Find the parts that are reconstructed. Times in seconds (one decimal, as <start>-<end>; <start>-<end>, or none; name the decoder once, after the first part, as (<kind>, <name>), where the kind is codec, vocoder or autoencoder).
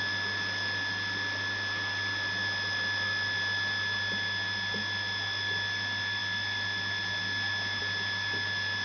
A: none